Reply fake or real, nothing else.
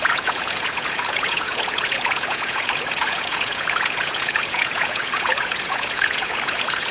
fake